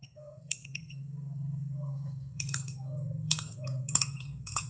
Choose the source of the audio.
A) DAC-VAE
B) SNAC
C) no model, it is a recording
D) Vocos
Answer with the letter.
B